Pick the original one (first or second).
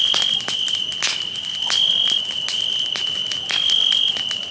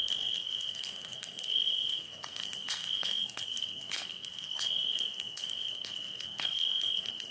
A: first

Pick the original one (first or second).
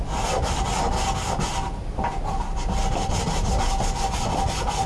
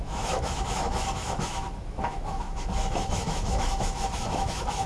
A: first